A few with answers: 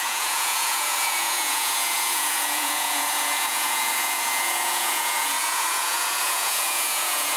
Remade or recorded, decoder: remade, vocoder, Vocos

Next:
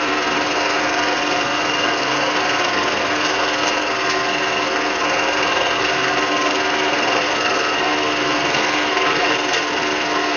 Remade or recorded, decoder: remade, codec, SNAC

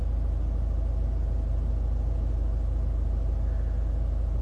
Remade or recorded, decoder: recorded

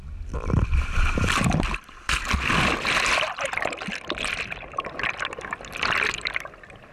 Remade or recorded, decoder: recorded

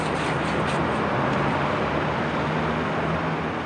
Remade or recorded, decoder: recorded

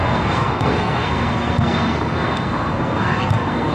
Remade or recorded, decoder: remade, codec, SNAC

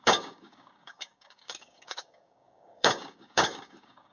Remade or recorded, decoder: remade, codec, DAC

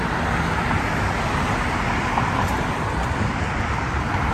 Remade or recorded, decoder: recorded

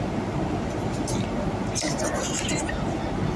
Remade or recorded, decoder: recorded